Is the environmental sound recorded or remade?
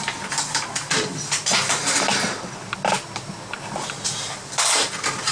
recorded